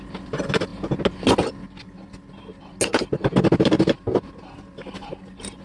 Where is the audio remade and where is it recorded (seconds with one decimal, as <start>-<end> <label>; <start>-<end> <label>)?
0.0-5.6 recorded